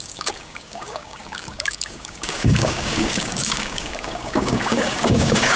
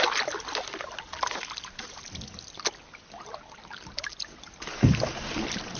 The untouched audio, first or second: second